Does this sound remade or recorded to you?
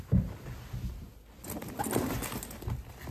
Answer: recorded